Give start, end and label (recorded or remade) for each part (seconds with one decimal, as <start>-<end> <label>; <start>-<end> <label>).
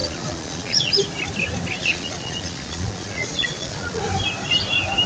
0.0-0.9 remade; 0.9-1.8 recorded; 1.8-4.0 remade; 4.0-5.1 recorded